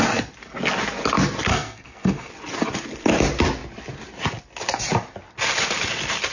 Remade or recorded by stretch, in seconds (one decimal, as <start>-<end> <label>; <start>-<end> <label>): 0.0-1.5 recorded; 1.5-2.3 remade; 2.3-6.3 recorded